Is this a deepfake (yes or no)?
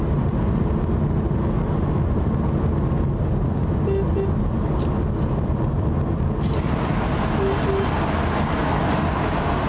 no